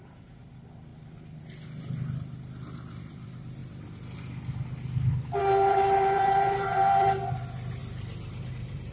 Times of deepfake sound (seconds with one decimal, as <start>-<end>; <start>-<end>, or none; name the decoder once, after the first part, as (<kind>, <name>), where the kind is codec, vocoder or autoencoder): 0.0-0.9 (vocoder, BigVGAN v2); 3.0-3.6; 5.4-8.9